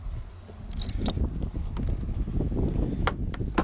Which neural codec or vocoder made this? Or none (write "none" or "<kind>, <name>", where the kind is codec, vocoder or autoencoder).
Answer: none